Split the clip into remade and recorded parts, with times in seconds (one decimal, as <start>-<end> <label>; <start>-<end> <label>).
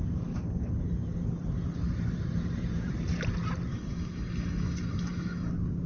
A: 0.0-3.7 recorded; 3.7-5.5 remade; 5.5-5.9 recorded